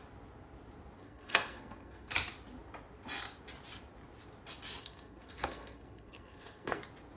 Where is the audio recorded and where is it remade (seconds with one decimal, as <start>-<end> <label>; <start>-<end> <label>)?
0.0-1.0 recorded; 1.0-2.1 remade; 2.1-4.8 recorded; 4.8-6.8 remade; 6.8-7.2 recorded